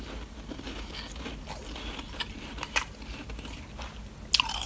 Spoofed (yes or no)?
no